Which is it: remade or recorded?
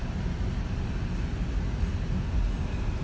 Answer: recorded